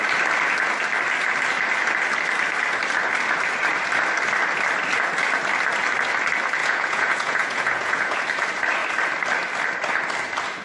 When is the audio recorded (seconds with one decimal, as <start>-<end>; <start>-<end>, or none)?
0.0-6.6; 8.2-10.6